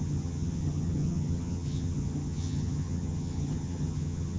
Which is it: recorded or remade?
remade